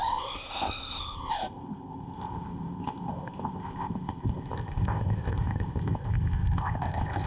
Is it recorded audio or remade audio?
remade